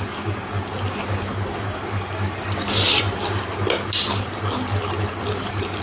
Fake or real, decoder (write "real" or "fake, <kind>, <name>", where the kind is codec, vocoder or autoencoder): real